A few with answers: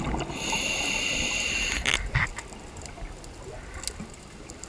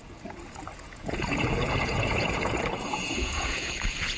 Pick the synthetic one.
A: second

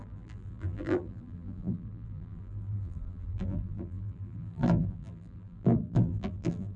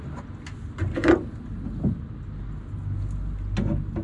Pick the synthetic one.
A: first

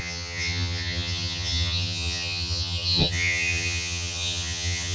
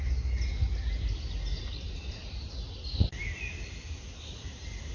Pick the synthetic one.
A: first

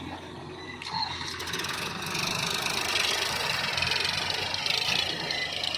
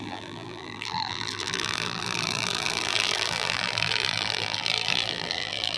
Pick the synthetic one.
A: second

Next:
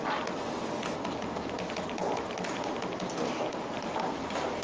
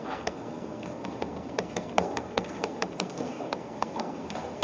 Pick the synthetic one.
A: second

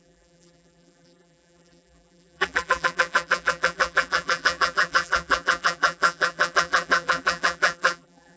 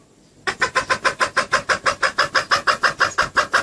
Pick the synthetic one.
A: first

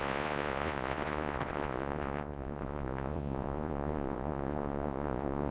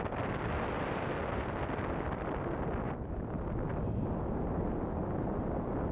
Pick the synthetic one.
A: first